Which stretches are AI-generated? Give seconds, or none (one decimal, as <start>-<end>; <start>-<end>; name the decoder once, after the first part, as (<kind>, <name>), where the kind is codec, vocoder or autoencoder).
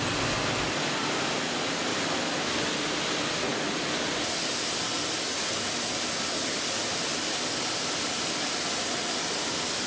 none